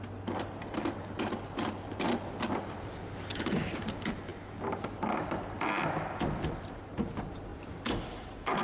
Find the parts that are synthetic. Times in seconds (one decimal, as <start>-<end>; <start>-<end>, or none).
none